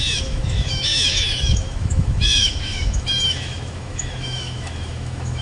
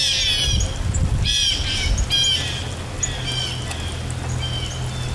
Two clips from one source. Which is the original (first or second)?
second